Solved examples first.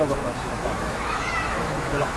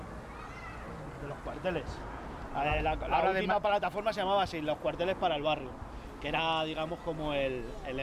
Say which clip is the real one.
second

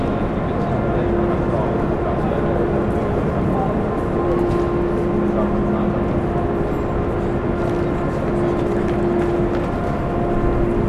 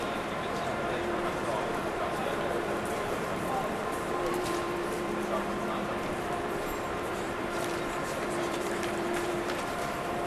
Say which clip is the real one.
first